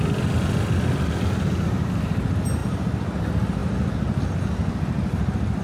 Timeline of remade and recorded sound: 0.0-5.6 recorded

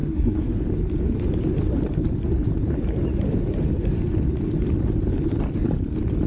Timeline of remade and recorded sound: 0.0-0.6 remade; 0.6-6.3 recorded

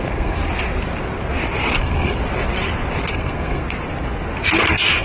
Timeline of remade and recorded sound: 0.0-0.4 remade; 0.4-1.8 recorded; 1.8-2.2 remade; 2.2-3.1 recorded; 3.1-3.6 remade; 3.6-5.0 recorded

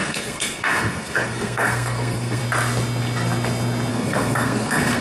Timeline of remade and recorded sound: 0.0-2.4 remade; 2.4-3.9 recorded; 3.9-5.0 remade

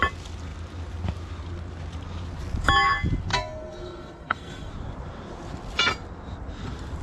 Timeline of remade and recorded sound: 0.0-3.3 recorded; 3.3-4.7 remade; 4.7-7.0 recorded